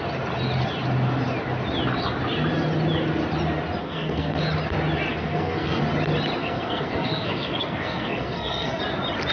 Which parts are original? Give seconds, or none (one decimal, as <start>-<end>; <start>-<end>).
0.0-3.8; 4.4-5.1; 5.8-6.4; 8.8-9.3